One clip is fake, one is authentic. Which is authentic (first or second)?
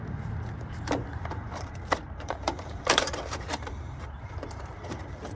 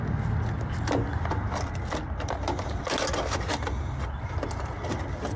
second